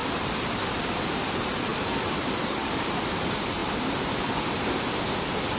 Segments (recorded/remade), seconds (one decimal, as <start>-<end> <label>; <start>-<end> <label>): 0.0-1.7 remade; 1.7-2.2 recorded; 2.2-3.6 remade; 3.6-5.6 recorded